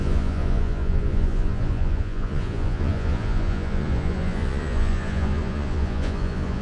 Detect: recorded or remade remade